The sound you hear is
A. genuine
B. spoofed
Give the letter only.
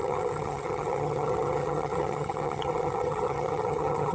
B